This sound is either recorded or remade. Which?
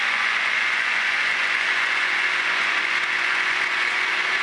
remade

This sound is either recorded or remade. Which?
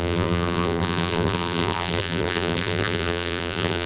remade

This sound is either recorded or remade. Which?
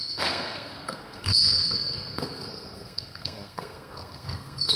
remade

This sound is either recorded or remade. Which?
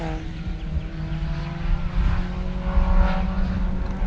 recorded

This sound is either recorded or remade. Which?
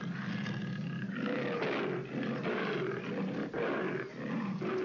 recorded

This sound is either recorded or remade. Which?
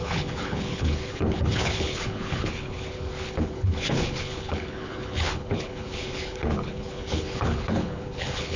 remade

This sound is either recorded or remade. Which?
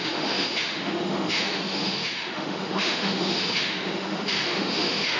remade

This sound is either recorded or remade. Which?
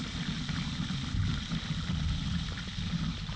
remade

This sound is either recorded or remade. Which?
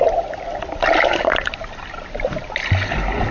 recorded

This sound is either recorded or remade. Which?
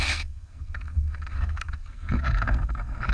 remade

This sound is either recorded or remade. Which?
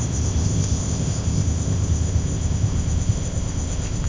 remade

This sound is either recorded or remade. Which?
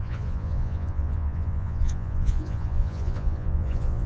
remade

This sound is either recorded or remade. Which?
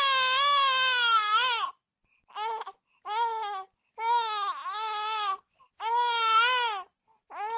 recorded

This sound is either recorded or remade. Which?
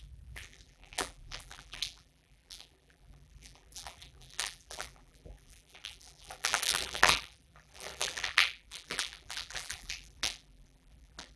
remade